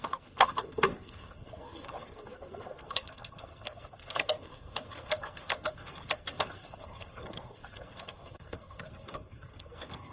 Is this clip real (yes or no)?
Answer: no